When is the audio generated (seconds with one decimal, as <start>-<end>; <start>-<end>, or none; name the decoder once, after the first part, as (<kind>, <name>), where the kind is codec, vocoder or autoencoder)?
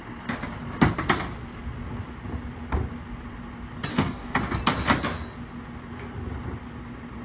3.9-4.4 (codec, DAC)